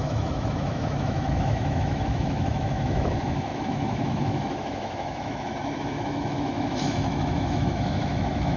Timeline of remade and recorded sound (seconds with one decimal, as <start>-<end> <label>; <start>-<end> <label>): 0.0-8.6 remade

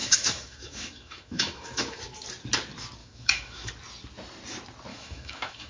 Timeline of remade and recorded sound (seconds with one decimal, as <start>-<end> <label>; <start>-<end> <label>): 0.0-2.0 remade; 2.0-3.0 recorded; 3.0-3.7 remade; 3.7-4.9 recorded; 4.9-5.7 remade